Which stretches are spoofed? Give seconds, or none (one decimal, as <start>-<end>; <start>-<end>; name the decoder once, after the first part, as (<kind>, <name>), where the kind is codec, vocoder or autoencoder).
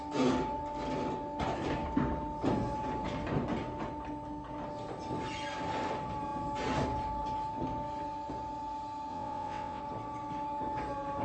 9.1-9.8 (vocoder, WaveNeXt)